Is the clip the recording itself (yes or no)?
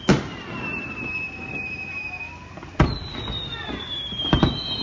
yes